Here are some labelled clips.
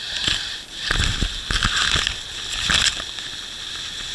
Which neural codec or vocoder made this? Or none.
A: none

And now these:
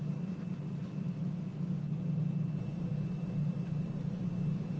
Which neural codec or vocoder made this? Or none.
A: none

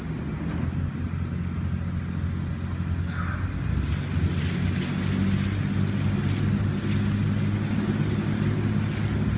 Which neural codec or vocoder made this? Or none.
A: none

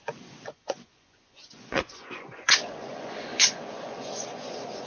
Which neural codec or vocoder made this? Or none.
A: vocoder, Vocos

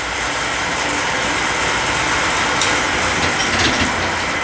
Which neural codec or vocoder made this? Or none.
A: none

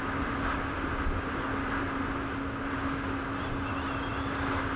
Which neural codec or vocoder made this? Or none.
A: none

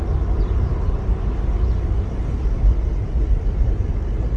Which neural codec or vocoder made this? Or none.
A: none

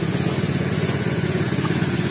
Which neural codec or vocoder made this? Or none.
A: vocoder, Vocos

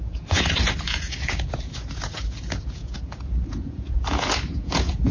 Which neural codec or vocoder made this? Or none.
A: vocoder, Vocos